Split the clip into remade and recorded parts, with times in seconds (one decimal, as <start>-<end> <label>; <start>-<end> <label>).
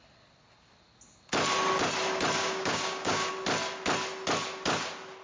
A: 0.0-2.4 recorded; 2.4-3.3 remade; 3.3-5.2 recorded